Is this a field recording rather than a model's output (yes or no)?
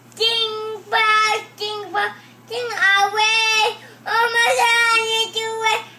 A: yes